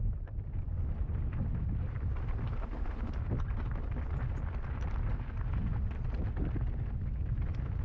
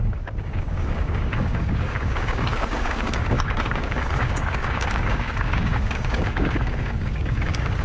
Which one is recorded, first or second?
first